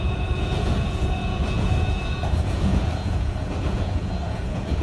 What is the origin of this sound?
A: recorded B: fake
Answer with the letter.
B